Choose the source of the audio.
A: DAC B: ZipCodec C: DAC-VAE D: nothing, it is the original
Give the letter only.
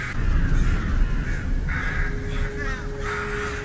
D